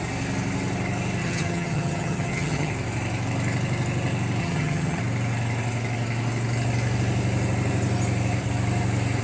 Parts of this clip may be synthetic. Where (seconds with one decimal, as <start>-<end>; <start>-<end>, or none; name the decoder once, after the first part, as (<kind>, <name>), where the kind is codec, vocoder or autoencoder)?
1.2-2.7 (vocoder, HiFi-GAN); 4.4-5.0